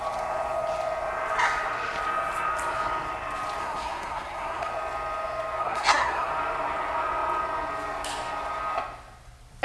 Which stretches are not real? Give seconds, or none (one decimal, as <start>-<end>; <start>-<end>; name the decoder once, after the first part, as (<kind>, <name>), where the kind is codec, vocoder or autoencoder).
3.6-4.7 (codec, SNAC); 5.6-6.3